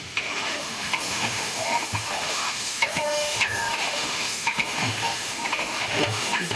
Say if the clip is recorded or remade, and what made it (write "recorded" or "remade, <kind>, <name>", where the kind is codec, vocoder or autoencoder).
remade, autoencoder, DAC-VAE